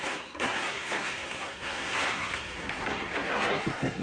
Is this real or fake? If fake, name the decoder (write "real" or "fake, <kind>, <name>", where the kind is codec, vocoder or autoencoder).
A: fake, codec, SNAC